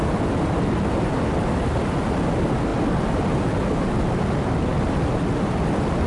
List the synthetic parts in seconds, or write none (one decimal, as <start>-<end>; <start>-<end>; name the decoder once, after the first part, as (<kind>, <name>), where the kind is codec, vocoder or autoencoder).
none